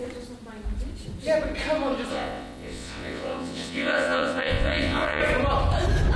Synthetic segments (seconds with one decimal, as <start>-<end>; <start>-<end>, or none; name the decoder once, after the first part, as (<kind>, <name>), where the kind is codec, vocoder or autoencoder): 2.1-5.2 (vocoder, WaveNeXt)